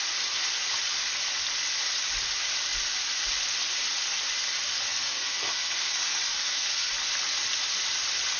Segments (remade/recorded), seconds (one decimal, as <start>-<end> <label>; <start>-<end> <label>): 0.0-4.9 recorded; 4.9-6.9 remade; 6.9-8.4 recorded